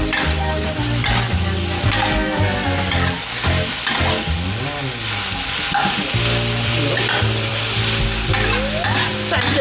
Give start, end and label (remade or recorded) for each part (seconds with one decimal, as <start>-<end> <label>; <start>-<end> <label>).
0.0-9.6 recorded